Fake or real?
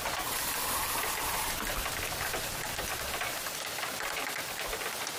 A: real